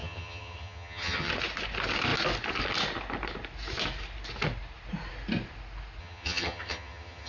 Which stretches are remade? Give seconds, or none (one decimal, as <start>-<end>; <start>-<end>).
0.0-1.3; 6.0-7.3